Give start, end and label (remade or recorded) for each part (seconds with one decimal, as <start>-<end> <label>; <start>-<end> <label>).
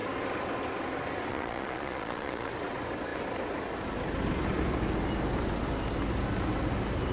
0.0-1.3 recorded; 1.3-2.5 remade; 2.5-7.1 recorded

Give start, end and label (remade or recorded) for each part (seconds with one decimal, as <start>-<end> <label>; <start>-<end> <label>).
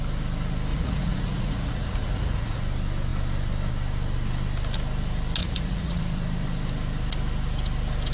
0.0-0.7 recorded; 0.7-2.6 remade; 2.6-5.4 recorded; 5.4-6.0 remade; 6.0-8.1 recorded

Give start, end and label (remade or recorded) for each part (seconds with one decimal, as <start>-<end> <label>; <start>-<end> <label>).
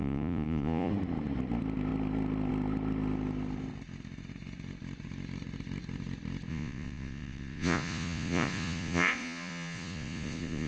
0.0-0.9 remade; 0.9-6.5 recorded; 6.5-10.7 remade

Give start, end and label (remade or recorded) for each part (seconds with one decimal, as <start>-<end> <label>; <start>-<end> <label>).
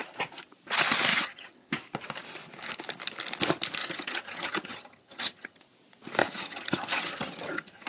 0.0-1.1 recorded; 1.1-1.7 remade; 1.7-3.8 recorded; 3.8-5.6 remade; 5.6-6.2 recorded; 6.2-7.9 remade